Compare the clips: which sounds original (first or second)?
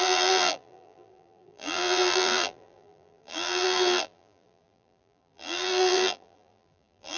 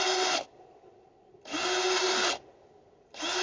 second